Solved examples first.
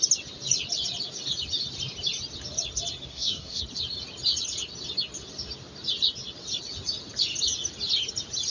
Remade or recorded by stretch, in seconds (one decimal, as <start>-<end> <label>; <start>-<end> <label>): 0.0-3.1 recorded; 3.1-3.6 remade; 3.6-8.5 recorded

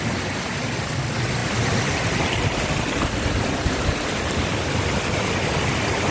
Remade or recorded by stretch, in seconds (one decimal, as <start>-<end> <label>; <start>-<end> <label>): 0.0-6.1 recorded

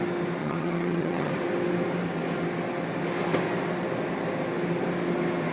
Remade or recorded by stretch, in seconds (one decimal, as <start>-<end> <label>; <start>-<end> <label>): 0.0-0.4 recorded; 0.4-1.3 remade; 1.3-5.5 recorded

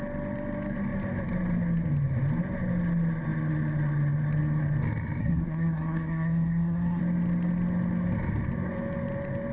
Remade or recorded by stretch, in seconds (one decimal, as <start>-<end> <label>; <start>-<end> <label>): 0.0-5.2 recorded; 5.2-7.0 remade; 7.0-9.5 recorded